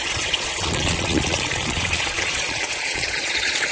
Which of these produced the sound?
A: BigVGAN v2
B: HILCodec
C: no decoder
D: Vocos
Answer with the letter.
D